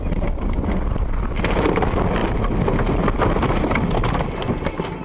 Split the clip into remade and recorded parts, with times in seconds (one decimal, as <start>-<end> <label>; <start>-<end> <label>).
0.0-2.2 remade; 2.2-3.2 recorded; 3.2-5.0 remade